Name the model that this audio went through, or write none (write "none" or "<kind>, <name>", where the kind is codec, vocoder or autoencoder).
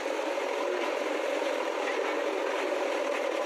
none